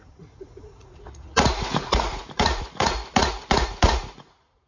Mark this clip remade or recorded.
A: remade